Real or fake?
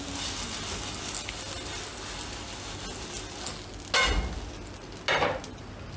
real